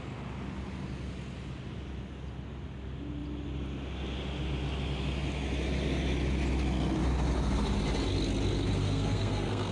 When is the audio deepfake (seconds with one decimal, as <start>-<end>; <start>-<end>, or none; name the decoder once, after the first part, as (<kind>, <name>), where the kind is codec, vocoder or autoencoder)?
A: 8.8-9.7 (codec, SNAC)